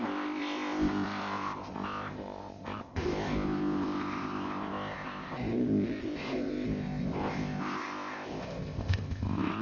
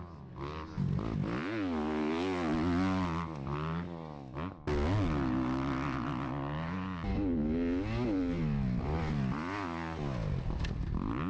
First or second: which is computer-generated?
first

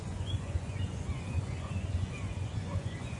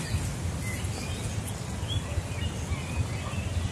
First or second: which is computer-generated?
first